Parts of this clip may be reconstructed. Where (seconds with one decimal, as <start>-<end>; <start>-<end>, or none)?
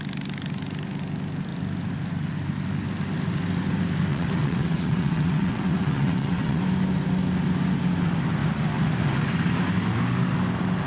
4.1-6.6